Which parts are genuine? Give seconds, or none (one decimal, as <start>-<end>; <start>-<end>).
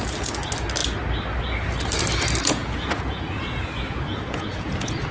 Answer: 0.0-2.4